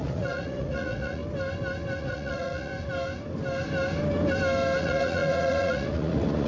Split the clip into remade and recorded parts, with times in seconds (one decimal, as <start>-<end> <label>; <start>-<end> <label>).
0.0-1.2 remade; 1.2-2.0 recorded; 2.0-2.7 remade; 2.7-4.8 recorded; 4.8-6.5 remade